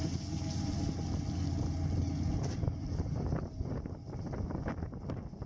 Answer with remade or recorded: recorded